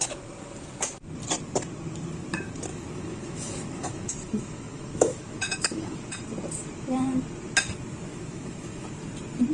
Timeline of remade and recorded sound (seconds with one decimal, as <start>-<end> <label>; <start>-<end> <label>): 0.0-2.7 recorded; 2.7-6.1 remade; 6.1-8.1 recorded; 8.1-8.9 remade; 8.9-9.5 recorded